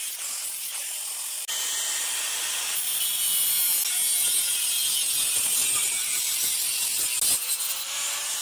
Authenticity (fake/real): real